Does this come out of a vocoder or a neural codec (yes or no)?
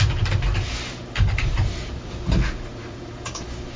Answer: yes